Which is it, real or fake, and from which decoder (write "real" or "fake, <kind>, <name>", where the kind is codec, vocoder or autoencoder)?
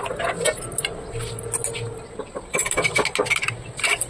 real